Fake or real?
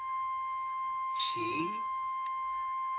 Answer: fake